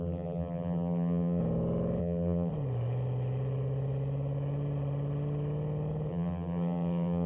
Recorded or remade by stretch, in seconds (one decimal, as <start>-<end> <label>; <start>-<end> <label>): 0.0-1.4 remade; 1.4-2.0 recorded; 2.0-2.5 remade; 2.5-6.1 recorded; 6.1-7.3 remade